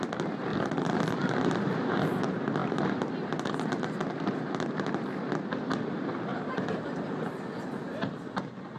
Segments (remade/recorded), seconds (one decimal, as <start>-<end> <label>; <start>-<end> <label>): 0.0-0.5 recorded; 0.5-1.0 remade; 1.0-6.3 recorded; 6.3-7.4 remade; 7.4-8.8 recorded